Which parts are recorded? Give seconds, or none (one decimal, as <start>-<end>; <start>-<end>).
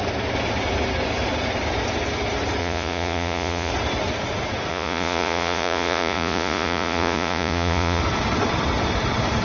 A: 0.0-2.6; 3.7-4.7; 8.0-9.4